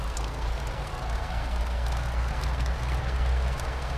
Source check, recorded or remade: remade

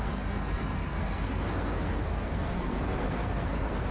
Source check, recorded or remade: remade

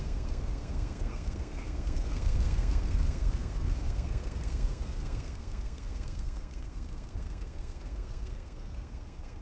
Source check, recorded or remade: remade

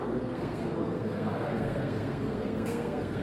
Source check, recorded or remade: remade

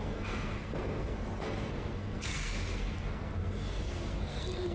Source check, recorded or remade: remade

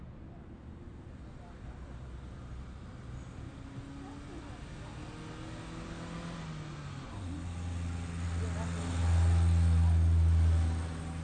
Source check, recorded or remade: recorded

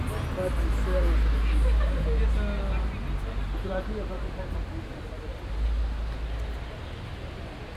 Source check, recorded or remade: recorded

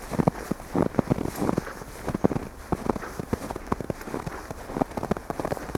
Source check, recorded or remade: recorded